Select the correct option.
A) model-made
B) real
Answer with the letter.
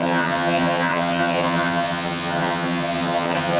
A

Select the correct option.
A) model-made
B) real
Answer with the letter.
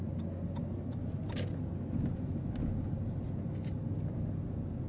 B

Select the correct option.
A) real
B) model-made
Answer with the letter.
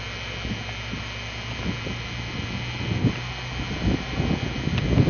A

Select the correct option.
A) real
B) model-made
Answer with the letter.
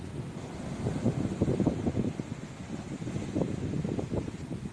A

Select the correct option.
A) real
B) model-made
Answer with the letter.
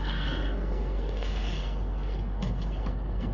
B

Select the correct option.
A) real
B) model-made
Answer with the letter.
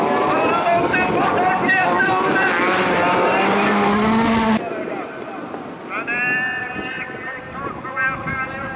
A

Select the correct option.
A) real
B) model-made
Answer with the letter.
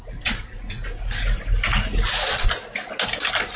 A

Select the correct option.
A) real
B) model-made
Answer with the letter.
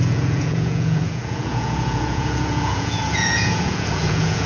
B